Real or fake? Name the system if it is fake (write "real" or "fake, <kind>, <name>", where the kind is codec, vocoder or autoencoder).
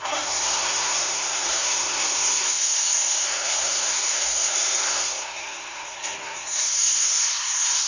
fake, codec, SNAC